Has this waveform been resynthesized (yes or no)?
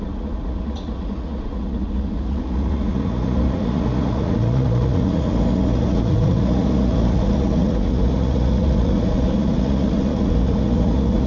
yes